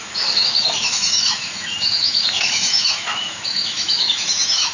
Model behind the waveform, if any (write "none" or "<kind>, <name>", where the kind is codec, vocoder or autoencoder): autoencoder, DAC-VAE